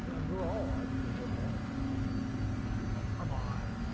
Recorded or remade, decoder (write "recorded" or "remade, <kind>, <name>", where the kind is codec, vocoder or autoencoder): recorded